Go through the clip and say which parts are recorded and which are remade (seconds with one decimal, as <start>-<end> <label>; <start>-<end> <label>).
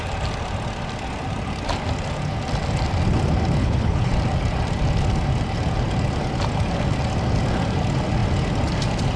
0.0-3.6 recorded; 3.6-4.1 remade; 4.1-9.2 recorded